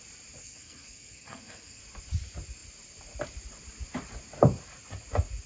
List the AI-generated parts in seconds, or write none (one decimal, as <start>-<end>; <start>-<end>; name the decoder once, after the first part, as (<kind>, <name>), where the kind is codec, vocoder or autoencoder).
0.4-1.8 (codec, SNAC)